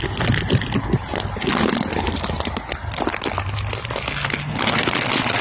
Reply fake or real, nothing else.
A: real